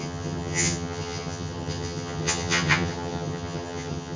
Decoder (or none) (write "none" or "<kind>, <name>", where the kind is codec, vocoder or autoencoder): vocoder, HiFi-GAN